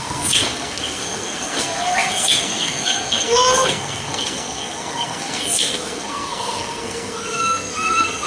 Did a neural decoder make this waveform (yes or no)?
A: yes